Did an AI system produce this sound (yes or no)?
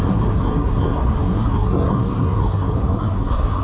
yes